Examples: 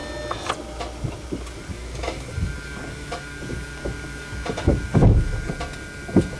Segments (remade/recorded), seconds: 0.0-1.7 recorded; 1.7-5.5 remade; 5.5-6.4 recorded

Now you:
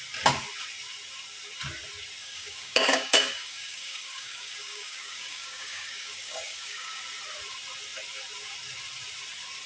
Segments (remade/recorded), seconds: 0.0-2.2 recorded; 2.2-7.0 remade; 7.0-9.7 recorded

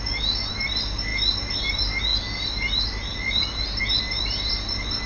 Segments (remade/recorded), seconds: 0.0-5.1 recorded